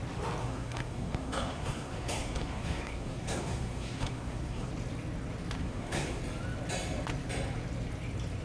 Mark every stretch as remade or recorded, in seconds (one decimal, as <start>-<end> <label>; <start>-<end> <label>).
0.0-0.4 recorded; 0.4-4.7 remade; 4.7-5.6 recorded; 5.6-6.2 remade; 6.2-8.4 recorded